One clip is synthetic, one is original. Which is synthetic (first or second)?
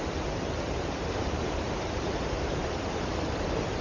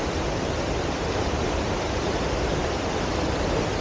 first